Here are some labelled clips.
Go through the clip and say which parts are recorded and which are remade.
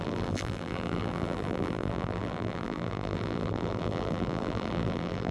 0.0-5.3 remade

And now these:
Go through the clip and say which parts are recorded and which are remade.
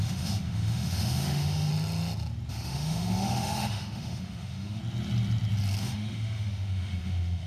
0.0-1.7 remade; 1.7-2.5 recorded; 2.5-4.8 remade; 4.8-5.8 recorded; 5.8-7.5 remade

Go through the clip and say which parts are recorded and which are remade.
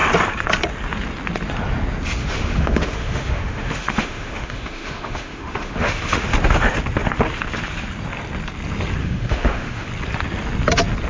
0.0-2.2 recorded; 2.2-6.3 remade; 6.3-9.0 recorded; 9.0-9.9 remade; 9.9-11.1 recorded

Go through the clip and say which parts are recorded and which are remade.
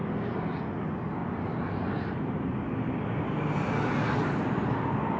0.0-1.2 recorded; 1.2-2.5 remade; 2.5-5.2 recorded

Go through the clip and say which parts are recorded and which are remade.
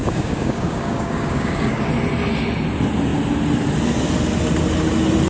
0.0-1.9 remade; 1.9-5.3 recorded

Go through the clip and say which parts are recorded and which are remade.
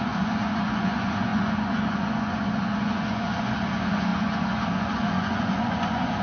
0.0-6.2 remade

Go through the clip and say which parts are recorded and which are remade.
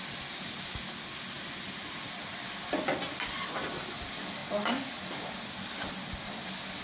0.0-6.8 recorded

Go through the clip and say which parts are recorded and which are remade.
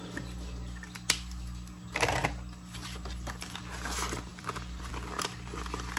0.0-4.3 recorded; 4.3-4.9 remade; 4.9-6.0 recorded